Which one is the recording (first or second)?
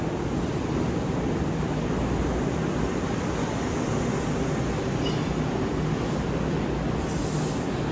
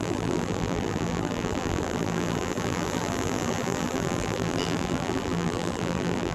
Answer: first